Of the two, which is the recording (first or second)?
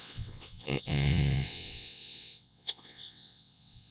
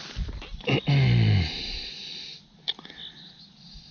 second